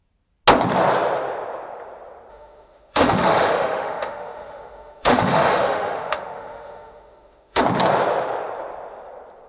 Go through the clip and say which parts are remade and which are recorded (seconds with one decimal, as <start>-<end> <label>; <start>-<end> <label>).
0.0-2.3 recorded; 2.3-7.6 remade; 7.6-9.5 recorded